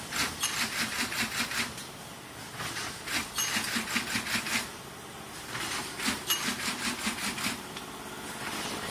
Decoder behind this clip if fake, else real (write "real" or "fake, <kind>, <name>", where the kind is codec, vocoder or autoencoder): real